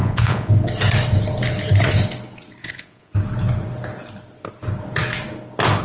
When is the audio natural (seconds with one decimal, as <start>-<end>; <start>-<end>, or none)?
0.5-2.6; 3.1-5.8